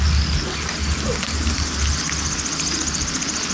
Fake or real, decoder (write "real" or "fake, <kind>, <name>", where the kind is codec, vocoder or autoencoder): real